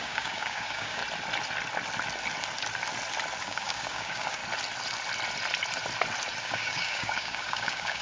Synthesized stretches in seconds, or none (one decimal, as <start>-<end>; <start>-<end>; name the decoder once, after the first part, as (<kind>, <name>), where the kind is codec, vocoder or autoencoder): 0.0-1.0 (codec, DAC); 3.4-4.4; 6.4-8.0